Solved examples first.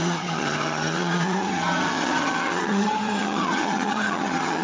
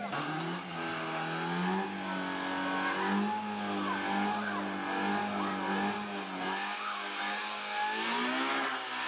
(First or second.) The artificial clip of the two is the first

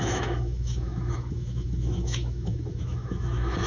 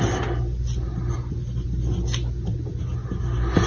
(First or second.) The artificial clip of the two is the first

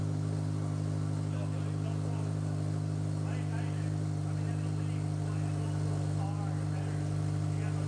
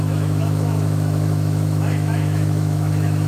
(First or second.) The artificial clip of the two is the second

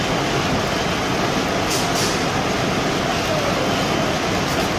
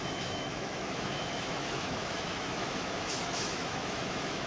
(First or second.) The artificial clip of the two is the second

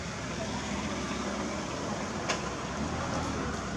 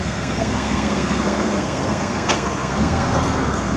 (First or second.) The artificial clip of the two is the second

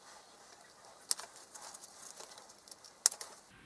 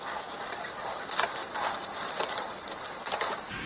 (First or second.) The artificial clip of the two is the second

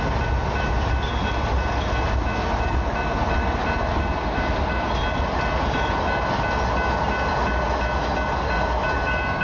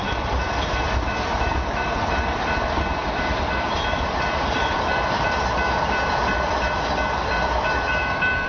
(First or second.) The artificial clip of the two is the second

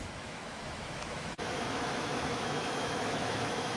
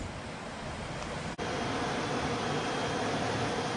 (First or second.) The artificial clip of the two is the first